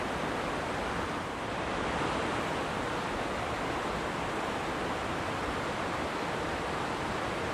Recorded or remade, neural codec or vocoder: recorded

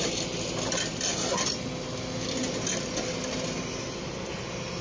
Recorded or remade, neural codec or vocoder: recorded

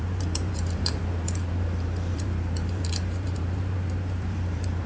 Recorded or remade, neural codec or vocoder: remade, vocoder, BigVGAN v2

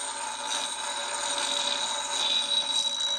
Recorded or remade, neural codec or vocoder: recorded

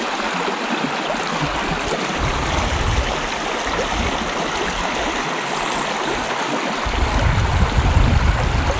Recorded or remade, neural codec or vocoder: recorded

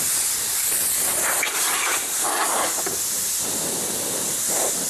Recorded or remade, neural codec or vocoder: remade, vocoder, BigVGAN v2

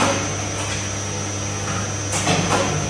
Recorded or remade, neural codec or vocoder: recorded